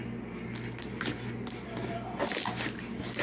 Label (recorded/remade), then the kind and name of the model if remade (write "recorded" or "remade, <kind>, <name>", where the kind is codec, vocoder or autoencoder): recorded